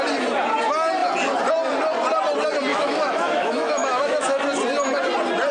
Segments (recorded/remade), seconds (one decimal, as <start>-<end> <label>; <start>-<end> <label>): 0.0-2.7 recorded; 2.7-4.4 remade; 4.4-5.5 recorded